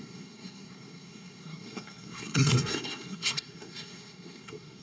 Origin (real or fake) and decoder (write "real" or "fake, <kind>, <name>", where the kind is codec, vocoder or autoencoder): fake, codec, SNAC